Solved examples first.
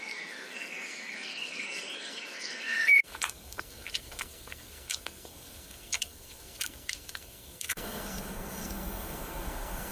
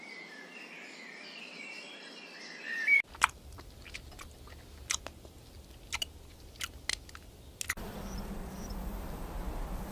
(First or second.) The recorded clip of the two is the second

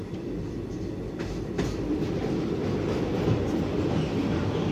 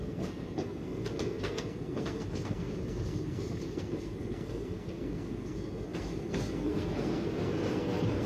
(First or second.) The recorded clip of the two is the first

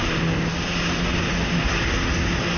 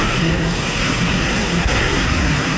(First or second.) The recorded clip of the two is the first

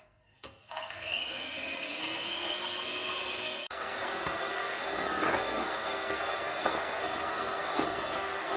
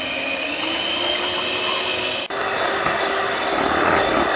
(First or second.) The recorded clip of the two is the second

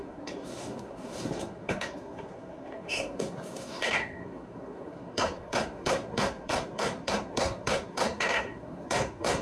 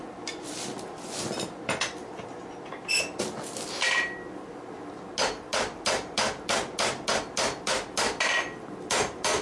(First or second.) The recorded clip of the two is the second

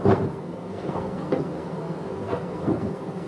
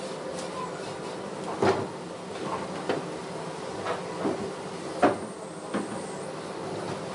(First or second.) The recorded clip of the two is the second